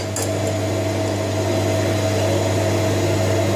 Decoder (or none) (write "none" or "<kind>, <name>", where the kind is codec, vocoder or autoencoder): none